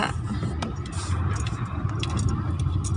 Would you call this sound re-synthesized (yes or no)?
yes